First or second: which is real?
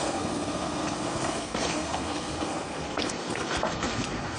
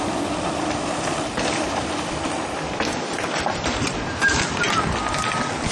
second